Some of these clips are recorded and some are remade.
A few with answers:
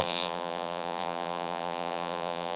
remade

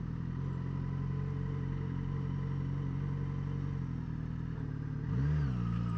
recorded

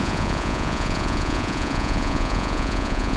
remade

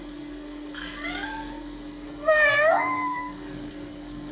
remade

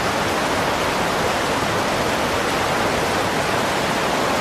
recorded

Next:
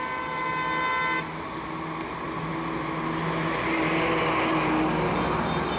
recorded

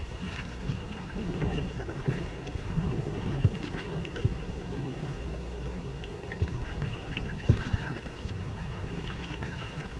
remade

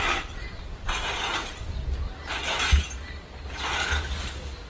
recorded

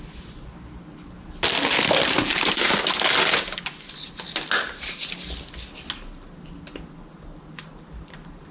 recorded